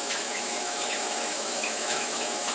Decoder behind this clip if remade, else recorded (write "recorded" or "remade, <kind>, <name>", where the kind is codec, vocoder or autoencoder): remade, autoencoder, DAC-VAE